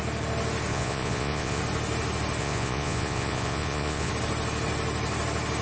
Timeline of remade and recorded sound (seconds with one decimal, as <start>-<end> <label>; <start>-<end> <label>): 0.0-0.7 recorded; 0.7-1.6 remade; 1.6-2.4 recorded; 2.4-4.1 remade; 4.1-5.6 recorded